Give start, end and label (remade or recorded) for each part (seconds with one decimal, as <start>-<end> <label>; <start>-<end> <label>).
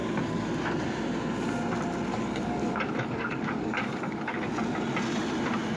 0.0-2.1 recorded; 2.1-4.5 remade; 4.5-5.8 recorded